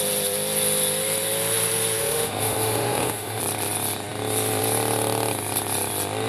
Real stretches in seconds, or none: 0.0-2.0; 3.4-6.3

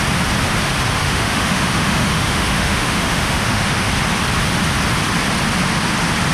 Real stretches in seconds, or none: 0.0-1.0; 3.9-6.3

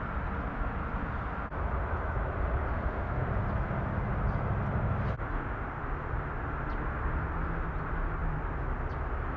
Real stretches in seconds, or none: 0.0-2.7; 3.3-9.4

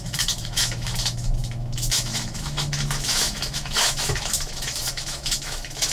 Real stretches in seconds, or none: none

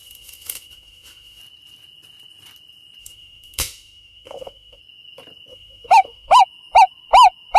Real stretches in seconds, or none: 1.4-3.0; 4.8-5.5; 6.4-7.6